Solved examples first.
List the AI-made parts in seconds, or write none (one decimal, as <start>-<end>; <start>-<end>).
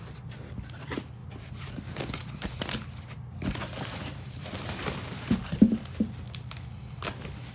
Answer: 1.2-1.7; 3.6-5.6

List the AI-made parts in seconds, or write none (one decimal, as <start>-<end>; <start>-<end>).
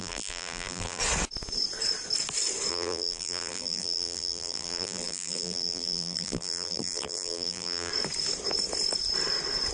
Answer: 0.0-1.0; 2.7-7.9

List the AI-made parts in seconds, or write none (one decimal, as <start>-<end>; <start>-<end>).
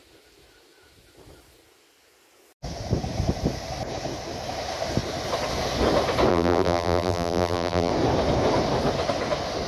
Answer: 6.3-7.9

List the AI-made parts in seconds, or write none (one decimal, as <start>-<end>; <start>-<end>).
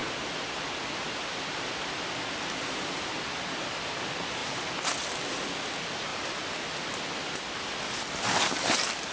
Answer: none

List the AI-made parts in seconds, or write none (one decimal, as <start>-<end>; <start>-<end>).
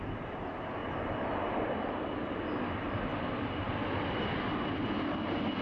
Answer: 3.1-3.7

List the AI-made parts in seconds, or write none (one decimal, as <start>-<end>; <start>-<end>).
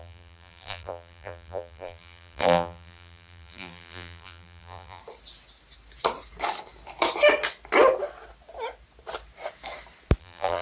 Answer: 0.0-5.0; 10.2-10.6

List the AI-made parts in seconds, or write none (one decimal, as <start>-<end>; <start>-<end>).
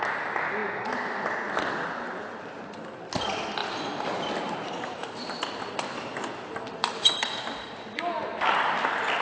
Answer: 3.6-5.5; 6.8-7.7